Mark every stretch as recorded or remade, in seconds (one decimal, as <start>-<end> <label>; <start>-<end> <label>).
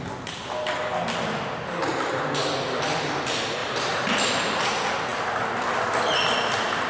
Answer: 0.0-1.9 recorded; 1.9-2.5 remade; 2.5-3.6 recorded; 3.6-4.6 remade; 4.6-6.9 recorded